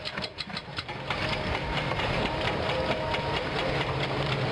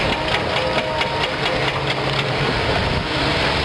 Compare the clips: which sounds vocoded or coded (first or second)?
first